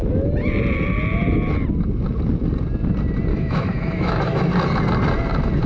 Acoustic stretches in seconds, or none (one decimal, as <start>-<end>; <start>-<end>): 0.0-3.3; 4.5-5.7